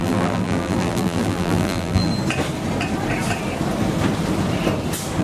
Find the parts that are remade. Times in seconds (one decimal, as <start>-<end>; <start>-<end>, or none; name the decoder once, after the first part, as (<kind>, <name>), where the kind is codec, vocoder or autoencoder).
0.0-2.1 (vocoder, BigVGAN v2)